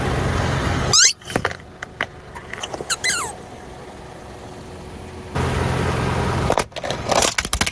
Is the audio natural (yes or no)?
yes